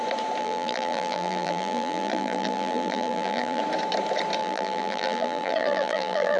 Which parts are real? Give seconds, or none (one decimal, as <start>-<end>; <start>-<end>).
0.0-0.4; 3.6-4.4

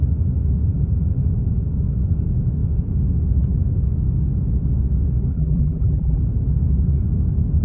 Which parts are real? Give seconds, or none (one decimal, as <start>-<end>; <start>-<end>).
0.0-5.3; 6.2-7.6

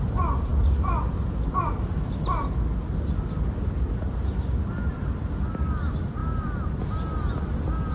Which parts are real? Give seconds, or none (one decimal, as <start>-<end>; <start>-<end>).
0.0-6.2; 6.8-7.9

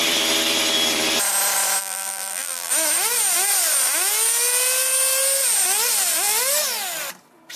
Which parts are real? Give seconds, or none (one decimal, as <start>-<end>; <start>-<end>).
0.0-1.8; 2.7-7.6